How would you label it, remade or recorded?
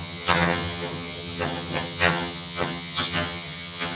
remade